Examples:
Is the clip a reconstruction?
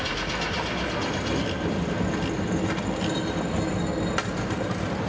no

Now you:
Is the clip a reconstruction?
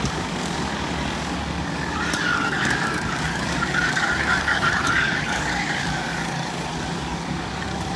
yes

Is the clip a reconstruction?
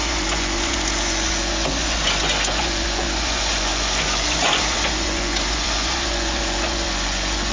yes